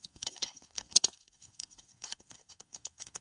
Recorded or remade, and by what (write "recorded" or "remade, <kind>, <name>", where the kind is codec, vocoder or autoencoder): remade, codec, SNAC